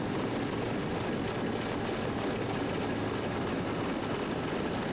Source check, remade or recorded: recorded